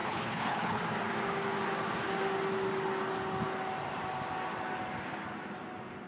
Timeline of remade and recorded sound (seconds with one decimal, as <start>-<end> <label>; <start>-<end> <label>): 0.0-0.8 remade; 0.8-6.1 recorded